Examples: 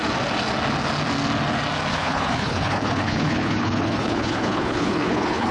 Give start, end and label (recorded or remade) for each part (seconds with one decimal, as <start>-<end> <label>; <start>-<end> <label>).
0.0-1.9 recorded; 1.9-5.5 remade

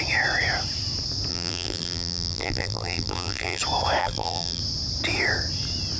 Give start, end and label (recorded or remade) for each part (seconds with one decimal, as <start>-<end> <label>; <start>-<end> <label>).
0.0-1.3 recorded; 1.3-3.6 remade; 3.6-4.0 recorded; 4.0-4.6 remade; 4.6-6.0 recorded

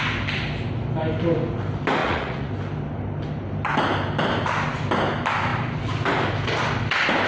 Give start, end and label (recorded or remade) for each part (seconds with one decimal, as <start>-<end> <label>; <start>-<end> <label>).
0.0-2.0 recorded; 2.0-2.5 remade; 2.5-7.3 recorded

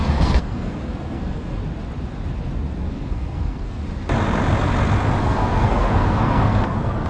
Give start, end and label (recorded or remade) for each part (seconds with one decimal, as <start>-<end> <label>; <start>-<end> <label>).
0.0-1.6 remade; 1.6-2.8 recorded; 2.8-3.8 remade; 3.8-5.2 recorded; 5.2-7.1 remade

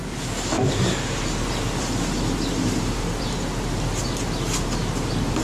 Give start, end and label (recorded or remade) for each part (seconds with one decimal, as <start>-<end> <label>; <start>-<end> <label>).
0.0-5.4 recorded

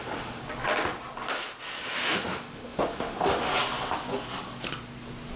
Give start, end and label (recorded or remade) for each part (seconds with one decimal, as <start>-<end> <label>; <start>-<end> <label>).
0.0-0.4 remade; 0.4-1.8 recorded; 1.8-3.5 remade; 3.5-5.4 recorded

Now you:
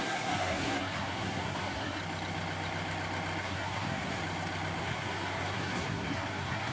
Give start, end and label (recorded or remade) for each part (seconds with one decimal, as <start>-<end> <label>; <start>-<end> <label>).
0.0-2.0 remade; 2.0-3.4 recorded; 3.4-4.2 remade; 4.2-4.8 recorded; 4.8-6.7 remade

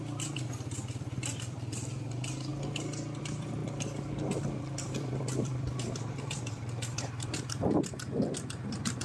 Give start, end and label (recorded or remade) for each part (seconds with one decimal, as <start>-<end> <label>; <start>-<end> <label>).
0.0-2.5 remade; 2.5-3.2 recorded; 3.2-3.6 remade; 3.6-4.4 recorded; 4.4-9.0 remade